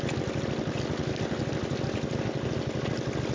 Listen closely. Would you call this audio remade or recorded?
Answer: recorded